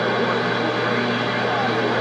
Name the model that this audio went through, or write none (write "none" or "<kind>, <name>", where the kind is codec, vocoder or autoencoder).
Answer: none